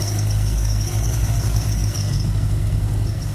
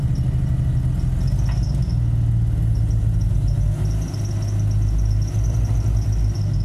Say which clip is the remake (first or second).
first